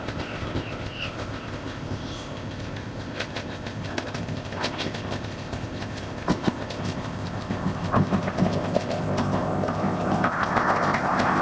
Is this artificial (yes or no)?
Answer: yes